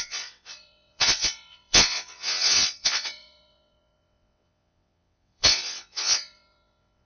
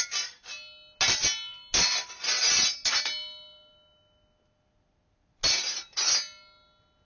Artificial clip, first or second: first